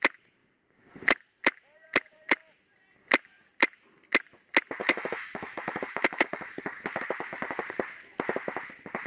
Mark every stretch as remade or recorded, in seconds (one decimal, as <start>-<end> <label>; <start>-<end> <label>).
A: 0.0-4.8 recorded; 4.8-6.6 remade; 6.6-9.1 recorded